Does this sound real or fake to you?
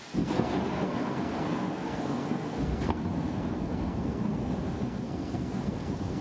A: fake